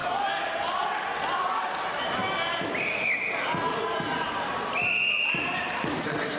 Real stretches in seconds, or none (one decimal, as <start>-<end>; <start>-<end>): 0.0-1.2; 2.2-6.0